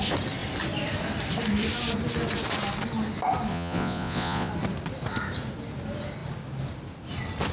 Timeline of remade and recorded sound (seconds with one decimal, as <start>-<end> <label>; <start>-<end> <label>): 0.0-3.5 recorded; 3.5-4.5 remade; 4.5-7.5 recorded